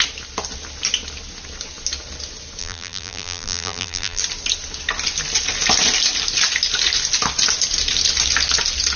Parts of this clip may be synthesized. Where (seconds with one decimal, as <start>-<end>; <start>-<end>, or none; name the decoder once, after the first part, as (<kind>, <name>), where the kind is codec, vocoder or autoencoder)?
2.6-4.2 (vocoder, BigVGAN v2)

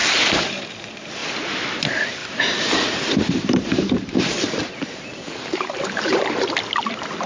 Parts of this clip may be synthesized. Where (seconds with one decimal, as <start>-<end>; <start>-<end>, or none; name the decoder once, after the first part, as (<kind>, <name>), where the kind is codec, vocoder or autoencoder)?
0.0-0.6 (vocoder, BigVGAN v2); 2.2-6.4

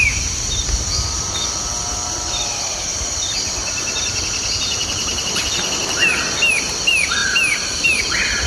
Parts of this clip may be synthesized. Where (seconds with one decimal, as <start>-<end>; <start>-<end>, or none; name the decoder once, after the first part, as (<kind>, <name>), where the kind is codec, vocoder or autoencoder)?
5.1-6.1 (vocoder, BigVGAN v2); 7.2-8.0

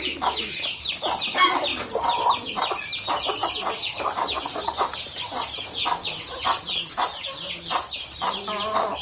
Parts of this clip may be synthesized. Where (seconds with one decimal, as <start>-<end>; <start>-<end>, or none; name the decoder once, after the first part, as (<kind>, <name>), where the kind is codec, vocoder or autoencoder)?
0.0-1.7 (vocoder, BigVGAN v2); 3.7-9.0

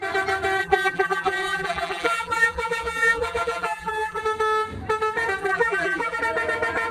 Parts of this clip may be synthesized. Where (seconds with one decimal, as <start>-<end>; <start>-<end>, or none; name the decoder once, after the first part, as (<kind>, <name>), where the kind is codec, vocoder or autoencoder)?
0.6-4.2 (vocoder, BigVGAN v2); 5.4-6.2

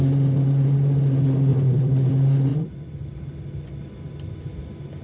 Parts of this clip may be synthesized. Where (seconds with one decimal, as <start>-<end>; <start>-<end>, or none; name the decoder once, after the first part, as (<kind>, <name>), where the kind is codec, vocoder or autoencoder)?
1.5-2.1 (vocoder, BigVGAN v2); 2.5-3.8

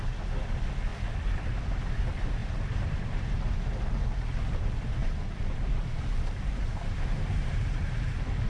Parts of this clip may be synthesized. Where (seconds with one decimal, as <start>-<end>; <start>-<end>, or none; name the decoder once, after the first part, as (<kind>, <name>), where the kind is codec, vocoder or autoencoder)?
2.4-3.7 (vocoder, BigVGAN v2); 5.0-8.1

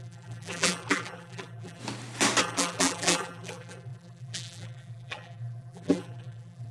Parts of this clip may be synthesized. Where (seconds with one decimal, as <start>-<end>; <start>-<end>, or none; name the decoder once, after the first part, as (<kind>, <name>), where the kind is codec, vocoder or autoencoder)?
0.0-1.8 (vocoder, BigVGAN v2); 2.4-6.7